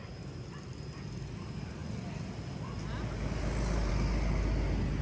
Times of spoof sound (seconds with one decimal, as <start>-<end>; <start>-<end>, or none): none